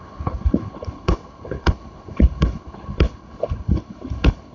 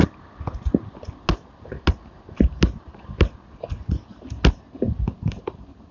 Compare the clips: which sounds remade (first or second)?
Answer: first